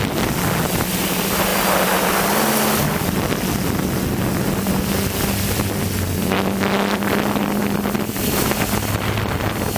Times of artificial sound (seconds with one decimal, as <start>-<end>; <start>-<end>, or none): none